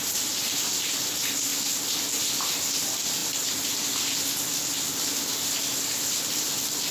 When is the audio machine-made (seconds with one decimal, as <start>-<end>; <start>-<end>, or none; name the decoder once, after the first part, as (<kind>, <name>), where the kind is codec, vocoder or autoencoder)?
none